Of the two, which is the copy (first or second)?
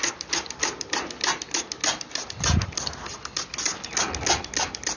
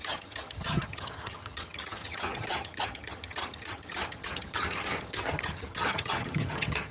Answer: second